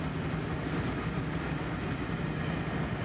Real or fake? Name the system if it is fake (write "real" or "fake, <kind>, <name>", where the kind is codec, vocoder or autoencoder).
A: real